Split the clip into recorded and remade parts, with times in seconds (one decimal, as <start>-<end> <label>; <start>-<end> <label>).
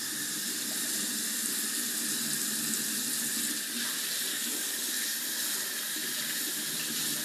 0.0-4.3 recorded; 4.3-4.9 remade; 4.9-7.2 recorded